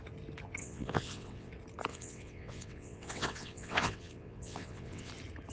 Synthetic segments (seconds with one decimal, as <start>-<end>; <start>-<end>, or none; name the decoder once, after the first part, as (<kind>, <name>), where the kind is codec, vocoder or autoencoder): 0.6-1.5 (vocoder, WaveNeXt); 1.9-5.1